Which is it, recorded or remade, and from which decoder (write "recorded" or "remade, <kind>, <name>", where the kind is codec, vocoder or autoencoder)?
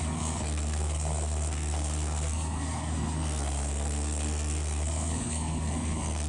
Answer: remade, codec, SNAC